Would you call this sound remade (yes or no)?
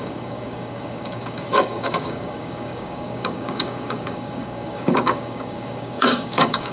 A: yes